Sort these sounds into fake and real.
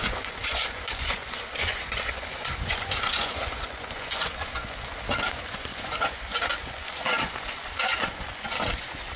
fake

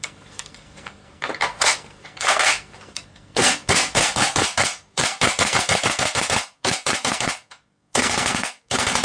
fake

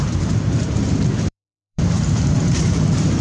fake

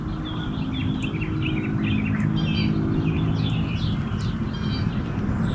real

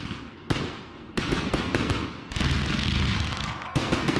fake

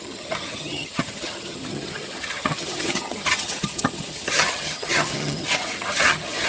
fake